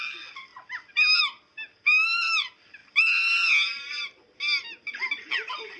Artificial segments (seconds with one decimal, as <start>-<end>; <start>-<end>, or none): none

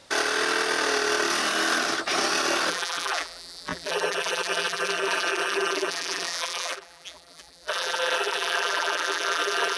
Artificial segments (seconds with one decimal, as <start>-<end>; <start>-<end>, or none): 2.7-9.8